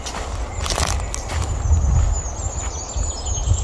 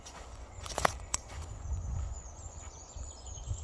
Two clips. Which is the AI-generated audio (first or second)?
second